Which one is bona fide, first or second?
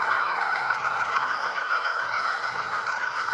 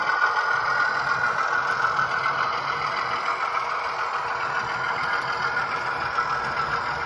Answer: second